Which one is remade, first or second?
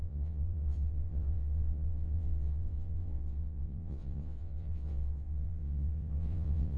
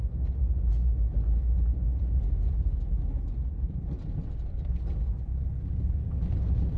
first